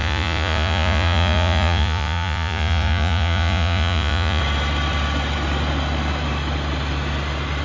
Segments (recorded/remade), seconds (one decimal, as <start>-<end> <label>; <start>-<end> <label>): 0.0-4.4 remade; 4.4-7.6 recorded